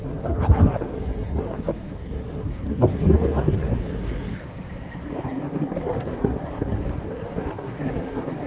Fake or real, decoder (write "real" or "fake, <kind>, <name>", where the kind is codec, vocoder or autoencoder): fake, codec, SNAC